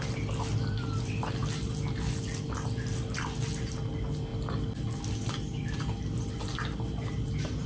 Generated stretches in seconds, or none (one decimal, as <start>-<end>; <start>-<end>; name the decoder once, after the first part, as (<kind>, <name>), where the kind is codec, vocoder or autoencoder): none